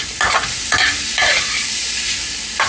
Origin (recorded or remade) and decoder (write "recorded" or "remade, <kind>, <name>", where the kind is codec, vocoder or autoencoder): recorded